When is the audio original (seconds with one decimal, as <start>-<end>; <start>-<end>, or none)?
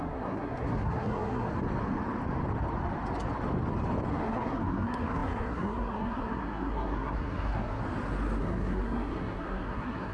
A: 1.5-4.1; 7.8-8.4